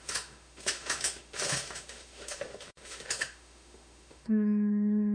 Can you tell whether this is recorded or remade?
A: remade